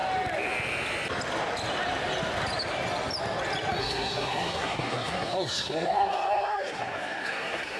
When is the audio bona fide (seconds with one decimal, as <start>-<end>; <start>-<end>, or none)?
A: 0.0-3.8